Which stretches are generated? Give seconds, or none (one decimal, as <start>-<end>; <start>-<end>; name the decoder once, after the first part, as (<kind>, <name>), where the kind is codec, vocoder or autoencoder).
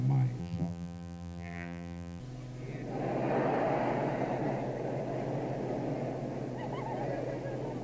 0.4-2.2 (vocoder, BigVGAN v2)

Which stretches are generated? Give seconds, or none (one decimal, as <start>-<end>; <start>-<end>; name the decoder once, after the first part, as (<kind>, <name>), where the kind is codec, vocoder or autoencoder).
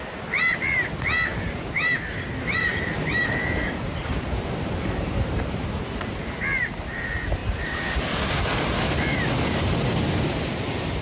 1.3-6.3 (vocoder, BigVGAN v2)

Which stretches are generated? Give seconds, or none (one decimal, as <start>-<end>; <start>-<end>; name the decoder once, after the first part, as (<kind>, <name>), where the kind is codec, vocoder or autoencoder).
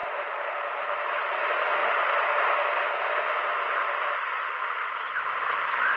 0.0-0.5 (vocoder, BigVGAN v2); 1.8-2.5; 4.6-5.6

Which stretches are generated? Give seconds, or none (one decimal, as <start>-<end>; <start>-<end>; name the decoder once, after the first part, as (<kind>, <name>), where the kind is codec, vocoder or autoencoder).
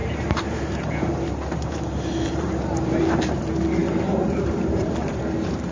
0.0-3.4 (vocoder, BigVGAN v2); 3.8-5.2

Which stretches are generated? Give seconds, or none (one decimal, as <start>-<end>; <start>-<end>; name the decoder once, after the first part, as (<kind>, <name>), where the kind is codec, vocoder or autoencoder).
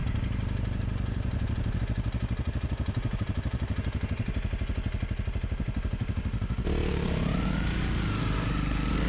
0.0-1.8 (vocoder, BigVGAN v2)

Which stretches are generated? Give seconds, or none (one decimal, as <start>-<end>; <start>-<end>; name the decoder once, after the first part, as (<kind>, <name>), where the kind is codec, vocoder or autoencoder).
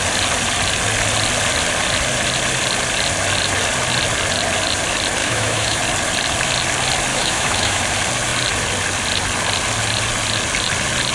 5.2-5.8 (autoencoder, DAC-VAE); 7.1-7.8